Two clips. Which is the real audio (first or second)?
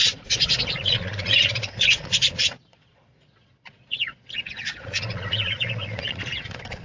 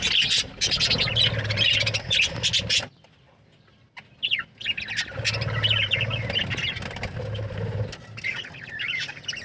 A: second